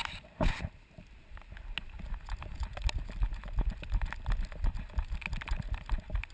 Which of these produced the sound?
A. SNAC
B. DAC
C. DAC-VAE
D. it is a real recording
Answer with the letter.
D